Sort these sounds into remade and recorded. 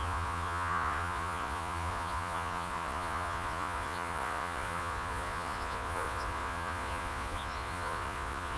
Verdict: remade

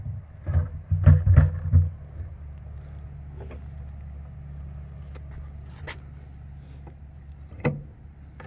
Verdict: recorded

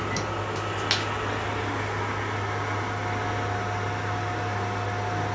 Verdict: recorded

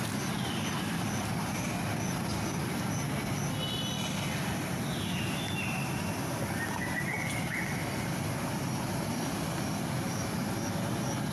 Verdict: recorded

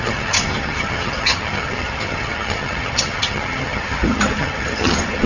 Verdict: remade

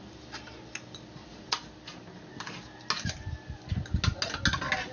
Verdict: recorded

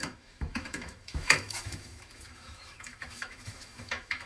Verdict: remade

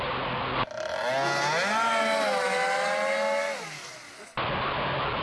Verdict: recorded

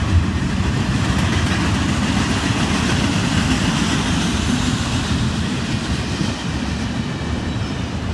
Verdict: recorded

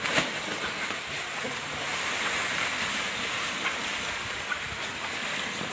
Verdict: recorded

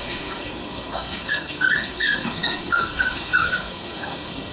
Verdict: remade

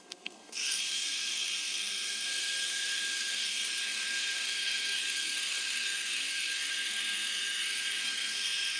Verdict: remade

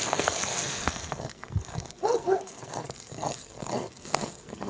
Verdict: remade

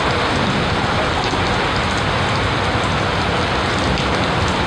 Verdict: recorded